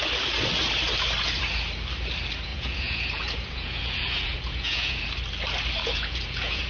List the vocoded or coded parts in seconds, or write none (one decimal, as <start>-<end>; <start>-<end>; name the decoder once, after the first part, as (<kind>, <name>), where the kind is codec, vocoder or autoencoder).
2.5-5.0 (vocoder, Vocos); 5.8-6.7